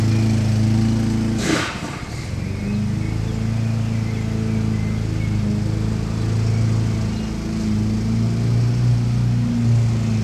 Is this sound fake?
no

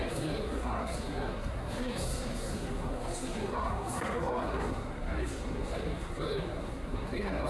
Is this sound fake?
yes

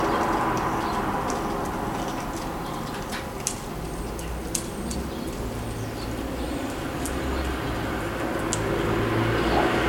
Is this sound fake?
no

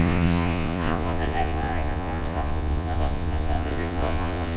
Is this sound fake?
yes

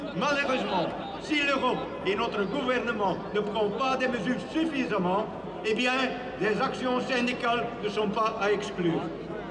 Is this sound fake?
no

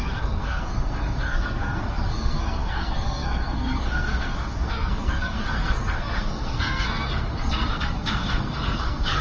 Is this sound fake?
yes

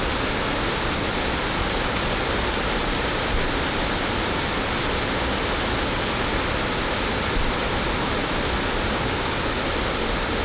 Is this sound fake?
no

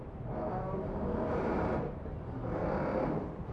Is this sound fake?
yes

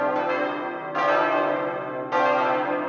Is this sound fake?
no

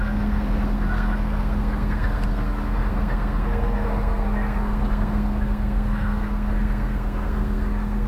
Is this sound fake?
yes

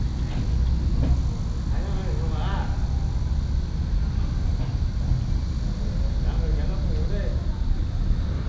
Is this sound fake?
no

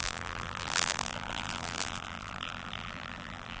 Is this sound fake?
yes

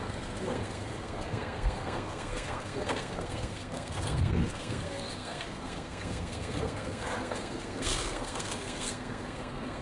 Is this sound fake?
yes